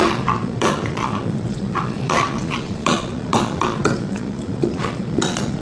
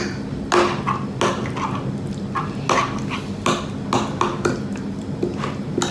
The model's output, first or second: first